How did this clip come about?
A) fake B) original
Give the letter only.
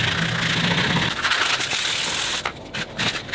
B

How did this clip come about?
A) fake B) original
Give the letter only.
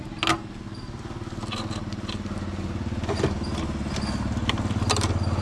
B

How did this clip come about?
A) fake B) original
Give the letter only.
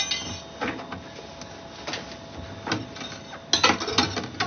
B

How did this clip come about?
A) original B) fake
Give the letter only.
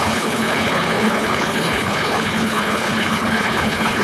B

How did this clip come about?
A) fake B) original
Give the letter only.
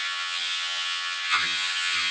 A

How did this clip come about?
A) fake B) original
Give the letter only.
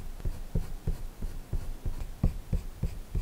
B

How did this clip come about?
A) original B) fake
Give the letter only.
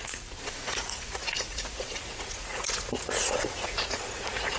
B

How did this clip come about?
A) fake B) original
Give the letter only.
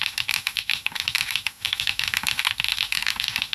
A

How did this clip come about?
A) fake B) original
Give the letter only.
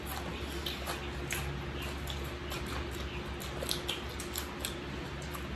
B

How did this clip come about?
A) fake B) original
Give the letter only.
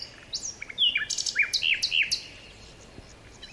B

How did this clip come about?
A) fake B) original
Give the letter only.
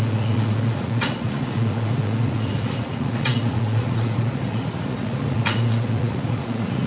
A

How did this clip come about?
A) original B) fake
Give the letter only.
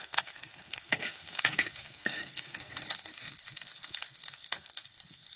B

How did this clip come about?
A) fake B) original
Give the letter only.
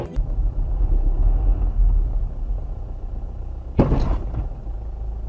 B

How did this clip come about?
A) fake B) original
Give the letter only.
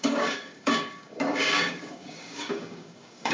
A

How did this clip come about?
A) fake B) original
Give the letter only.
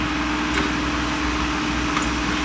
B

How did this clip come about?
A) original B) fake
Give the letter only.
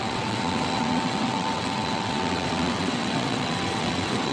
B